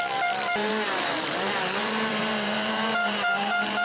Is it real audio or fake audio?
fake